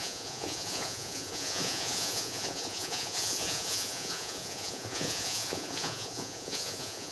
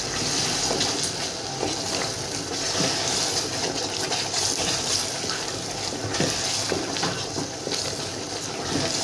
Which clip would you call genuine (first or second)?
second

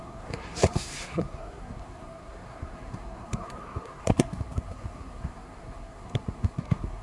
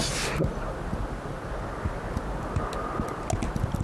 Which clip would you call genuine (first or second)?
second